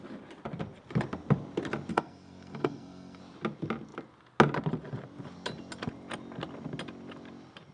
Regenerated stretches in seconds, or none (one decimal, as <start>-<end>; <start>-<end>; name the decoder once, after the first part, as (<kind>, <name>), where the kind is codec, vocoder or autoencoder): 1.9-3.2 (codec, SNAC)